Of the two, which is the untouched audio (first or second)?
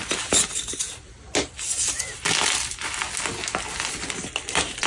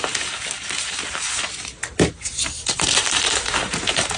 first